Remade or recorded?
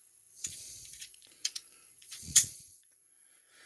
remade